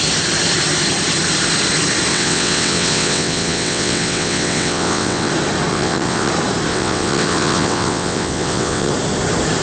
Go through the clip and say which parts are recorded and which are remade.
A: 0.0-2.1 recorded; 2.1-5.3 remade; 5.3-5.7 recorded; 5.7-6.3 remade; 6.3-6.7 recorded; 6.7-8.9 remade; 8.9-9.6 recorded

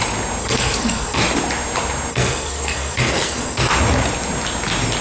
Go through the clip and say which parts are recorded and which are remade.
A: 0.0-0.4 recorded; 0.4-1.2 remade; 1.2-2.1 recorded; 2.1-3.7 remade; 3.7-5.0 recorded

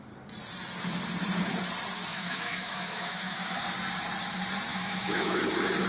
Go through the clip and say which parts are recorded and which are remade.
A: 0.0-2.1 recorded; 2.1-3.6 remade; 3.6-4.7 recorded; 4.7-5.4 remade; 5.4-5.9 recorded

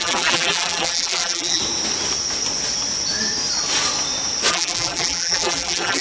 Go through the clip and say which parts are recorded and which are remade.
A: 0.0-1.6 remade; 1.6-4.5 recorded; 4.5-6.0 remade

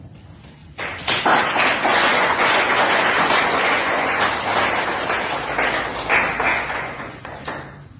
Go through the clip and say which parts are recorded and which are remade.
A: 0.0-0.6 recorded; 0.6-1.2 remade; 1.2-1.9 recorded; 1.9-4.2 remade; 4.2-6.5 recorded; 6.5-7.6 remade; 7.6-8.0 recorded

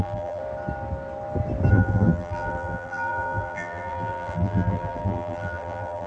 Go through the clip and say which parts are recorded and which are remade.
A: 0.0-0.4 remade; 0.4-1.7 recorded; 1.7-6.1 remade